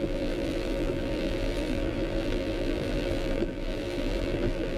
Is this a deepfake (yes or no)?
yes